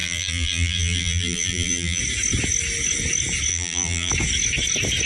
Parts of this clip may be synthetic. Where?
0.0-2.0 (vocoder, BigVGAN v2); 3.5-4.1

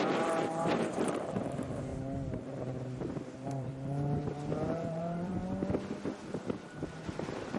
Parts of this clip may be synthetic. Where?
0.0-1.9 (vocoder, BigVGAN v2); 2.4-5.4; 6.8-7.6

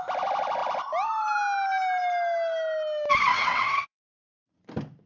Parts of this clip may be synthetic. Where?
3.3-4.0 (vocoder, WaveNeXt)

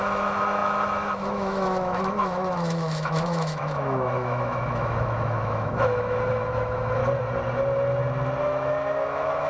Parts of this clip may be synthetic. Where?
0.0-7.0 (autoencoder, DAC-VAE); 8.4-9.5

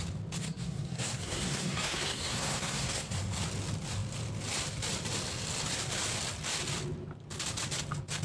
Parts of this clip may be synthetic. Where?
0.4-3.2 (codec, SNAC)

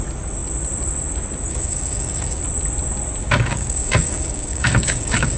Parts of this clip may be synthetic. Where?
1.5-2.4 (codec, DAC); 3.2-5.4

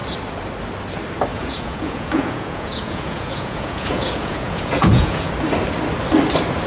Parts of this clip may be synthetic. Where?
1.3-5.3 (vocoder, Vocos)